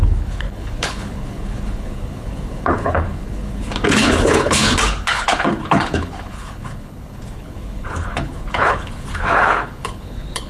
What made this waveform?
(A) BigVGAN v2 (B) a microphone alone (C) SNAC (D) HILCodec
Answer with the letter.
D